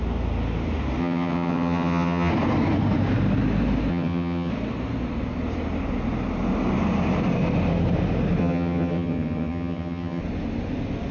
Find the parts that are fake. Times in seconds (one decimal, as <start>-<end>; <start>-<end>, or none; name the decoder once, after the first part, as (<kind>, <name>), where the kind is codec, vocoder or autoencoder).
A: 1.0-2.3 (vocoder, HiFi-GAN); 3.9-4.5; 8.4-10.2

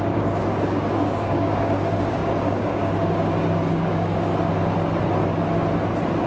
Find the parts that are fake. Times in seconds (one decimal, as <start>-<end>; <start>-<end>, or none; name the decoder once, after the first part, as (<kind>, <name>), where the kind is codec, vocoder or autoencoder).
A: 0.0-4.3 (codec, DAC)

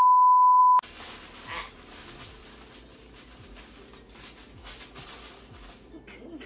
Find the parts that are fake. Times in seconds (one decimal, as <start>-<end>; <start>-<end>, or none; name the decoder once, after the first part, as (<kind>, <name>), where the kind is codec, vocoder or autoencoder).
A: none